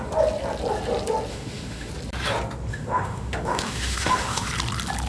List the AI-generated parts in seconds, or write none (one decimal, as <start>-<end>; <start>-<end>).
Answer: 1.3-1.9; 2.7-4.5

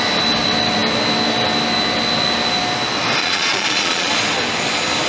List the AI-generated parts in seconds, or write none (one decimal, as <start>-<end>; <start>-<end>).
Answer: 3.2-4.1

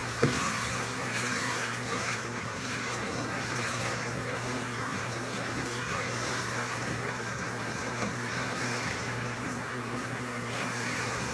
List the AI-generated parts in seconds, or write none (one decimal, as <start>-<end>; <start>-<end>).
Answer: 0.0-11.3

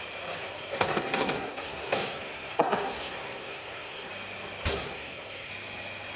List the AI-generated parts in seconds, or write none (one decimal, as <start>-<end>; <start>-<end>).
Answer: 0.4-4.1; 4.7-5.5

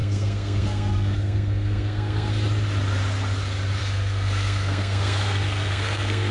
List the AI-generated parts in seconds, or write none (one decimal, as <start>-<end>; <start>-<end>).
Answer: 0.0-2.3; 3.8-6.3